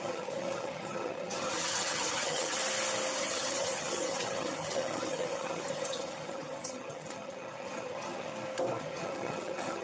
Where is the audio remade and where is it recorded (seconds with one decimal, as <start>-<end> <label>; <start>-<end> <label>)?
0.0-2.6 remade; 2.6-3.2 recorded; 3.2-8.3 remade; 8.3-8.8 recorded; 8.8-9.8 remade